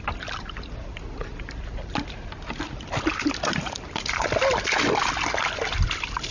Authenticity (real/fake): real